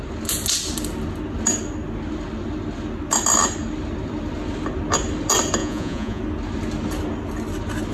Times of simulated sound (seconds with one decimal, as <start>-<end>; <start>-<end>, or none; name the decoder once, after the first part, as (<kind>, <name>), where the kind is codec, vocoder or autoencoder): 5.6-6.2 (vocoder, Vocos)

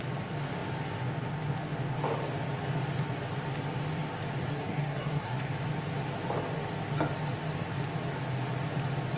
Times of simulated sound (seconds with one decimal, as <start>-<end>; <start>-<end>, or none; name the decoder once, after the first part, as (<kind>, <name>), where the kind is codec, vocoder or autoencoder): 4.5-5.5 (codec, SNAC)